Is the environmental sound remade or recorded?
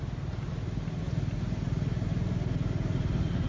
recorded